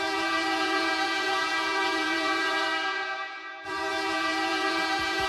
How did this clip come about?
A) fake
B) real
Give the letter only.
A